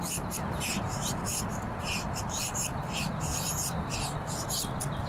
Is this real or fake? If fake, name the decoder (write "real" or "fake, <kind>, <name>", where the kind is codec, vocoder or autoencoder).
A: fake, vocoder, BigVGAN v2